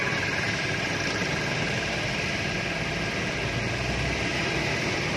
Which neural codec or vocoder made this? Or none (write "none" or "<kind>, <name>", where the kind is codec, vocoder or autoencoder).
none